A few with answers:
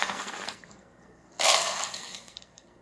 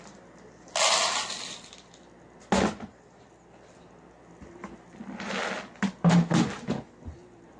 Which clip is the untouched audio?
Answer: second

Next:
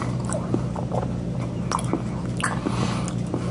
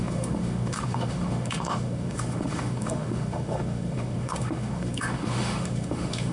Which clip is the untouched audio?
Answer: first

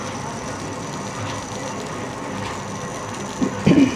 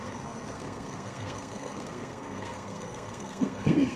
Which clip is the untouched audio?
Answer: first